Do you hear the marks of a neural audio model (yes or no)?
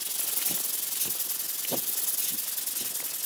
no